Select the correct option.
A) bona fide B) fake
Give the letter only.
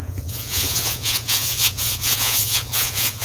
B